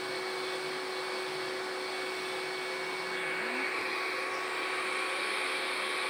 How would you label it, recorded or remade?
recorded